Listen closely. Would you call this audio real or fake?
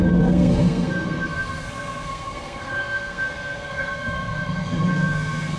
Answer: fake